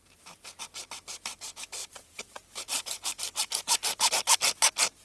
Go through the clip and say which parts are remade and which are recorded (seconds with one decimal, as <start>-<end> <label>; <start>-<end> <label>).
0.0-0.6 remade; 0.6-1.8 recorded; 1.8-4.1 remade; 4.1-5.0 recorded